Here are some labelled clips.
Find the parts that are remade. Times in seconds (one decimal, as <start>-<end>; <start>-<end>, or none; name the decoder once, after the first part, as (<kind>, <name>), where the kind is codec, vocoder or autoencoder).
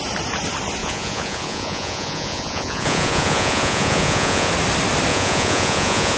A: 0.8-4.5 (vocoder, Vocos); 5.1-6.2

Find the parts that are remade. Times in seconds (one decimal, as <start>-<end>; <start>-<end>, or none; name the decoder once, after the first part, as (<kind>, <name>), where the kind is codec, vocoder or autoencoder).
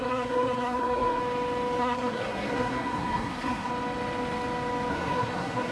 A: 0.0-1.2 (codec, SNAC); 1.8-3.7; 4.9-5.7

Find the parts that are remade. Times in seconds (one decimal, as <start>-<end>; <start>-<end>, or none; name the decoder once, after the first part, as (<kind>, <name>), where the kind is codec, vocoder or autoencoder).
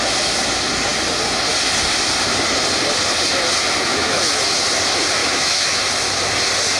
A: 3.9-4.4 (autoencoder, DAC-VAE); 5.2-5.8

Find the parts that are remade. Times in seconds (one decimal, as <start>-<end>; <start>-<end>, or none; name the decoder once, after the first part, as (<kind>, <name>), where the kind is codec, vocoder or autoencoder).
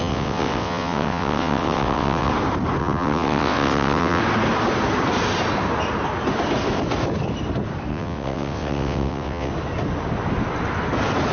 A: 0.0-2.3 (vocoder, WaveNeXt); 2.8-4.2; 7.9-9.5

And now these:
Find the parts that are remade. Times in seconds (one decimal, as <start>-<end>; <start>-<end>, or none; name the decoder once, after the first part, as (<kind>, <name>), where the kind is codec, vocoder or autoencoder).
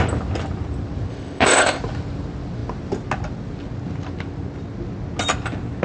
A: 1.1-1.8 (codec, ZipCodec)